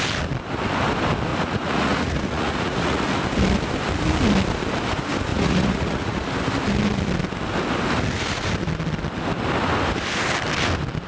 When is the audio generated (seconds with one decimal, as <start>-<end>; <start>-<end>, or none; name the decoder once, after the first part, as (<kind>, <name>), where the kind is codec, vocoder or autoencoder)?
1.3-3.2 (vocoder, Vocos); 5.3-6.3